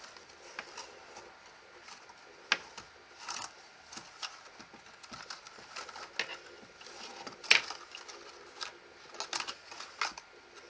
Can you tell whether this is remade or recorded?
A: recorded